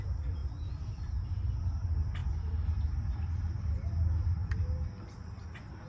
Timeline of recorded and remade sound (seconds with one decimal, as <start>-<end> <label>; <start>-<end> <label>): 0.0-5.9 recorded

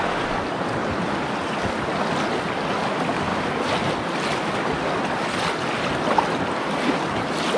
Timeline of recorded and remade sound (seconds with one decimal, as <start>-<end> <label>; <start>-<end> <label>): 0.0-7.6 recorded

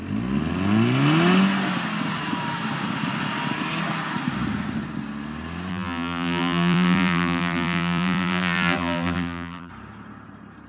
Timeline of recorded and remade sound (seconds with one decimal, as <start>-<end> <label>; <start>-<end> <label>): 0.0-5.7 recorded; 5.7-9.7 remade; 9.7-10.7 recorded

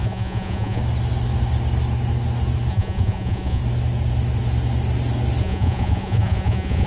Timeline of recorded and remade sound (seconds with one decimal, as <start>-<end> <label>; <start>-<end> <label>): 0.0-0.8 remade; 0.8-2.7 recorded; 2.7-3.6 remade; 3.6-5.4 recorded; 5.4-6.9 remade

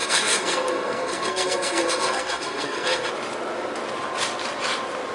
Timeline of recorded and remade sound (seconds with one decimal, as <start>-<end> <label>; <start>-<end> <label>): 0.0-3.1 remade; 3.1-5.1 recorded

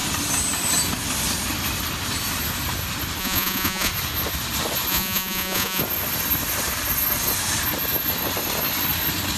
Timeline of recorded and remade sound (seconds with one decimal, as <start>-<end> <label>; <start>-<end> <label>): 0.0-3.2 recorded; 3.2-3.9 remade; 3.9-4.9 recorded; 4.9-5.8 remade; 5.8-9.4 recorded

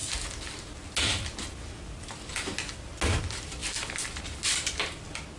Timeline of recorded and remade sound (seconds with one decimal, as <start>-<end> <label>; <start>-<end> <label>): 0.0-5.4 recorded